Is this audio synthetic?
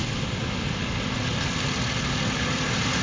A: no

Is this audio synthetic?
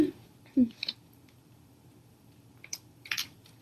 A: yes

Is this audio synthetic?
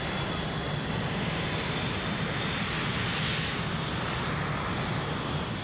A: no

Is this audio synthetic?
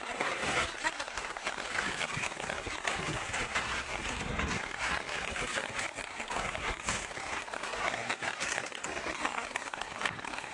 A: yes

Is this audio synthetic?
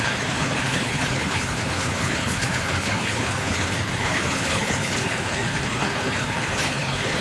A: yes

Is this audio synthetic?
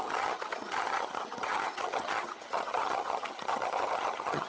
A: yes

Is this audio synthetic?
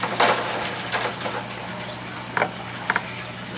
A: no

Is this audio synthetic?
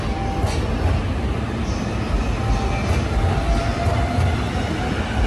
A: no